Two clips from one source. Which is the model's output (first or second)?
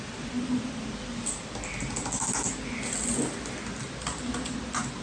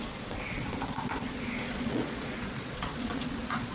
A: second